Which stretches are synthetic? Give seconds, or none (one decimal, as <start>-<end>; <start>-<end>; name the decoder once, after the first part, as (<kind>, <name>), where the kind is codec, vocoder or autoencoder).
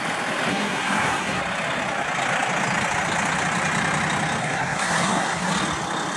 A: 0.5-1.4 (codec, SNAC); 4.4-5.5